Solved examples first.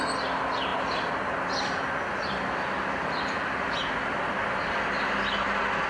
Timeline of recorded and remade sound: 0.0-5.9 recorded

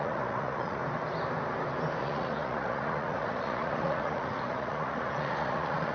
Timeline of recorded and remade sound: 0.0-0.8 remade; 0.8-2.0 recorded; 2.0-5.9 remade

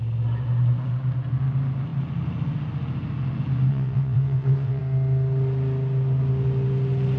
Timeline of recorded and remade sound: 0.0-3.7 recorded; 3.7-4.8 remade; 4.8-7.2 recorded

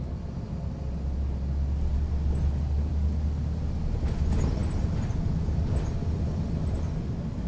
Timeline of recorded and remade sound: 0.0-7.5 recorded

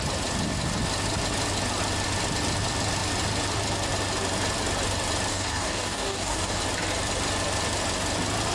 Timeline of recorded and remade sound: 0.0-5.3 recorded; 5.3-6.6 remade; 6.6-8.5 recorded

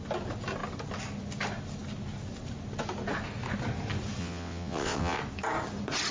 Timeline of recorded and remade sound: 0.0-4.2 recorded; 4.2-5.2 remade; 5.2-6.1 recorded

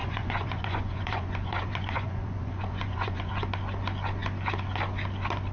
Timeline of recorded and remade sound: 0.0-3.3 remade; 3.3-5.5 recorded